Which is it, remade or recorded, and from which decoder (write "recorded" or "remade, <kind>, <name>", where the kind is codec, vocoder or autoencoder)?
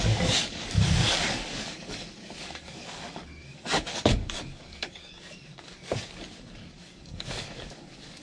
remade, codec, DAC